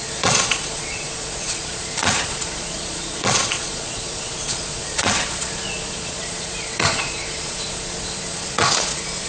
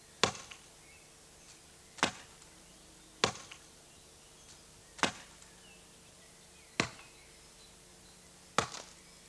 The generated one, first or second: first